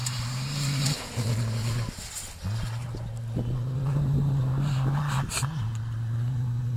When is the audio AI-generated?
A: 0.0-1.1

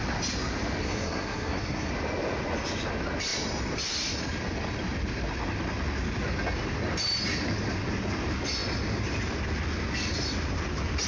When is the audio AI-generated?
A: 0.8-1.9

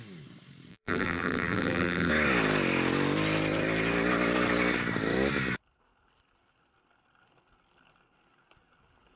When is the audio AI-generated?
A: 0.7-2.1